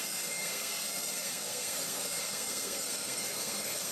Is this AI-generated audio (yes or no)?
yes